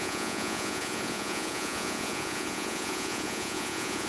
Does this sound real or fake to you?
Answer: fake